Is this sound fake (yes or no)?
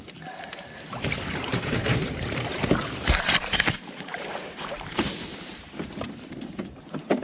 yes